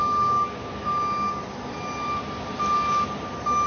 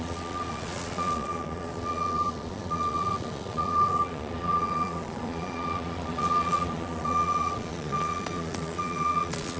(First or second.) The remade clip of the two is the second